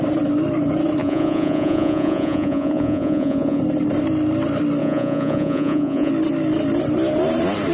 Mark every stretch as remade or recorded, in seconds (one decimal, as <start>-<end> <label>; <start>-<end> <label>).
0.0-1.0 recorded; 1.0-3.6 remade; 3.6-4.8 recorded; 4.8-6.1 remade; 6.1-7.7 recorded